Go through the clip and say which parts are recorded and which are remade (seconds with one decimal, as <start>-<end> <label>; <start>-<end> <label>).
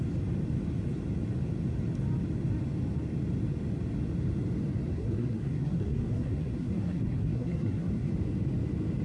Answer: 0.0-4.9 recorded; 4.9-8.1 remade; 8.1-9.0 recorded